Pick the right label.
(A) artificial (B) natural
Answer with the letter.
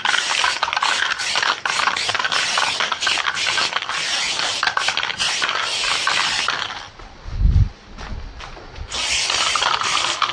B